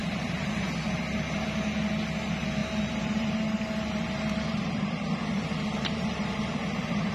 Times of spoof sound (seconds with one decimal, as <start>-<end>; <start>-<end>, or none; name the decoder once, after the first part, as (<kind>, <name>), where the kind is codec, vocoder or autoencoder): 0.0-1.0 (vocoder, BigVGAN v2); 2.6-7.1